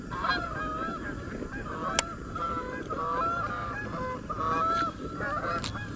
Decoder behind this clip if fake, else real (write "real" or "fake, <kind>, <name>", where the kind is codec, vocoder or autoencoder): real